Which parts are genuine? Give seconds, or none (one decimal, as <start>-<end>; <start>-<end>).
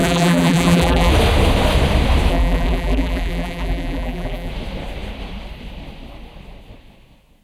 1.1-2.3; 4.5-7.4